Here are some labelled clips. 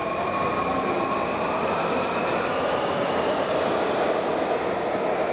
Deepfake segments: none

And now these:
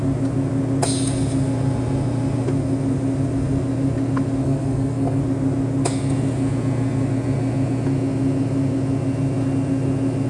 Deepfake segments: 4.4-5.2 (codec, SNAC)

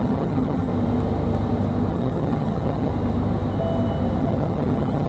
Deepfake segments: 0.0-0.7 (vocoder, HiFi-GAN); 1.9-2.9; 4.2-5.1